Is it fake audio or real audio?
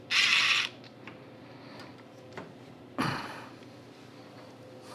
real